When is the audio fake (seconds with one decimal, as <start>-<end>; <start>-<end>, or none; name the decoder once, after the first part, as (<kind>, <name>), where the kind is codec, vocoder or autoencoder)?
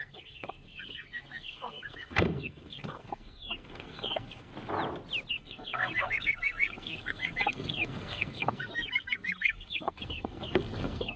0.0-4.5 (codec, SNAC); 5.3-11.2